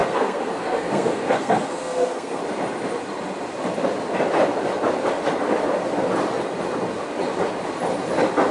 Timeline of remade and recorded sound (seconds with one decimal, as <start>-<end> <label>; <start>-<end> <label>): 0.0-2.4 remade; 2.4-8.5 recorded